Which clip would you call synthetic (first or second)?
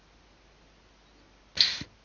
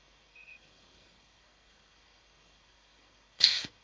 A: second